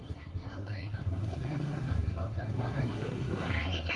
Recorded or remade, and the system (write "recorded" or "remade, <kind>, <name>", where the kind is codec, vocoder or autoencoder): remade, codec, SNAC